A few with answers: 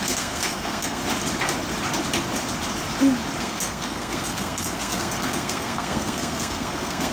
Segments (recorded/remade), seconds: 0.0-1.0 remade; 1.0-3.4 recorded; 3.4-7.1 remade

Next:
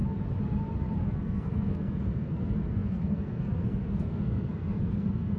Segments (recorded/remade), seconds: 0.0-1.0 recorded; 1.0-5.4 remade

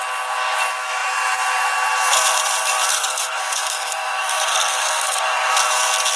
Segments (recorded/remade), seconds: 0.0-2.9 recorded; 2.9-5.5 remade; 5.5-6.2 recorded

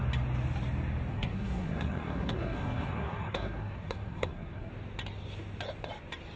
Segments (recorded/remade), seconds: 0.0-1.1 recorded; 1.1-4.7 remade; 4.7-6.4 recorded

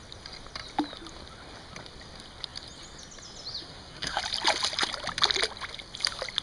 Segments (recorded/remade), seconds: 0.0-3.6 recorded; 3.6-4.2 remade; 4.2-6.4 recorded